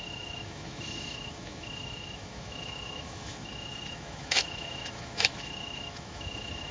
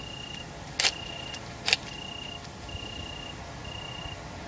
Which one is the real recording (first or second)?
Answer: second